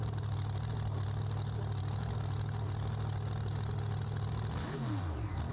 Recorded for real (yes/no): yes